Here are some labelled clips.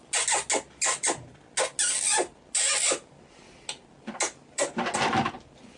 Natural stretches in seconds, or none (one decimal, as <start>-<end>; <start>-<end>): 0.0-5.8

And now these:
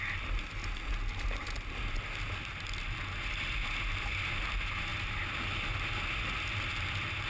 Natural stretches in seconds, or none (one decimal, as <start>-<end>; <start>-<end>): 0.0-7.3

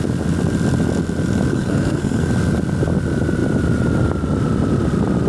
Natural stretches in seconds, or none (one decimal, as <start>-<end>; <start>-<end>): 0.0-1.5; 2.3-5.3

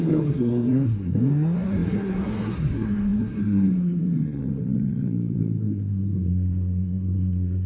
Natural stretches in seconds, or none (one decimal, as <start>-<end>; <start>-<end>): none

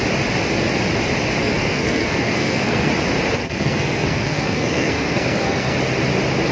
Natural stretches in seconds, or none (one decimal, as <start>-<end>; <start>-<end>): 0.0-1.4; 2.9-3.4; 5.8-6.5

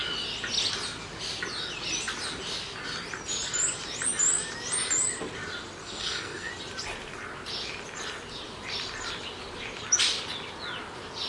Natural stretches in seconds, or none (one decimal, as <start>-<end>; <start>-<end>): 0.0-5.8; 6.5-11.3

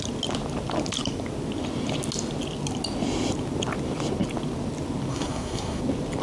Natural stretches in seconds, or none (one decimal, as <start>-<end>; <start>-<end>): 0.0-5.1; 5.8-6.2

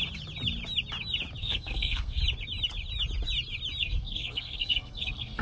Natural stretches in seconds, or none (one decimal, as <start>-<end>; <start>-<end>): 0.0-1.4; 2.2-3.8